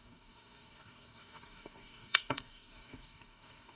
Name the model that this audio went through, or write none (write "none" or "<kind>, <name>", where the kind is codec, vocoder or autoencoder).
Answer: codec, DAC